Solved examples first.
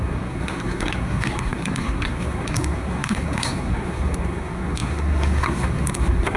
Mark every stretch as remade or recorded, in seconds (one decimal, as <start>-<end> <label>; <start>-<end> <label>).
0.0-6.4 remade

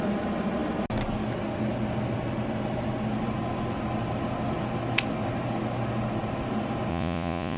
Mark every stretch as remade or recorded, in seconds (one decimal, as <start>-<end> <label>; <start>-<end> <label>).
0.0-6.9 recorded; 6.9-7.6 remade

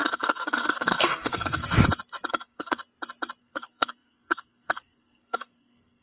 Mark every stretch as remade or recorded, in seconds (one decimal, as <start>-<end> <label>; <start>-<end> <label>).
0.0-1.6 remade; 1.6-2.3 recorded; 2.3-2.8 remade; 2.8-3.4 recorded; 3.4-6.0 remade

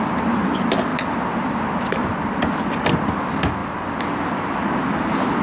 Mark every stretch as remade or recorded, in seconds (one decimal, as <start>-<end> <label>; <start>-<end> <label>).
0.0-5.4 recorded

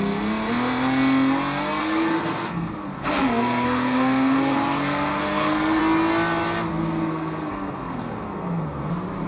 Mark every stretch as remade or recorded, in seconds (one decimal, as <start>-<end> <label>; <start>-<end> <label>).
0.0-1.8 recorded; 1.8-5.8 remade; 5.8-6.7 recorded; 6.7-8.9 remade; 8.9-9.3 recorded

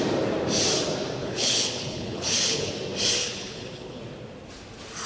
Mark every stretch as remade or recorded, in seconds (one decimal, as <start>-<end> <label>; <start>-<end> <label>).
0.0-1.2 recorded; 1.2-2.7 remade; 2.7-3.2 recorded; 3.2-4.0 remade; 4.0-5.1 recorded

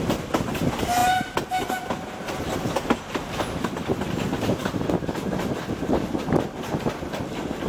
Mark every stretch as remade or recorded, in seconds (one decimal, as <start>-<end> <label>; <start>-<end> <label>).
0.0-7.7 recorded

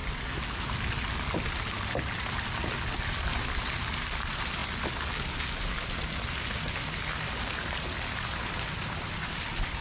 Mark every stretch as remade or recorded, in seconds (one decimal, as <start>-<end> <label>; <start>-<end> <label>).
0.0-9.8 recorded